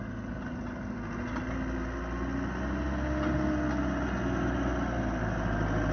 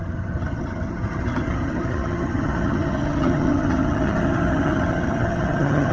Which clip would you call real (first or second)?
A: first